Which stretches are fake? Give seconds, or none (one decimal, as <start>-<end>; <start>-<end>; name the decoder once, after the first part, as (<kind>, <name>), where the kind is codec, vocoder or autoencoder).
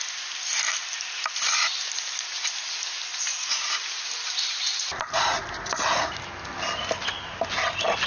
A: 3.3-4.0 (vocoder, Vocos)